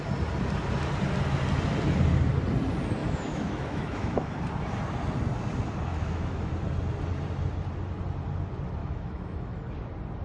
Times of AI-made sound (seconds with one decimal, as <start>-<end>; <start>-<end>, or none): 3.0-4.4; 5.9-6.5; 8.8-9.6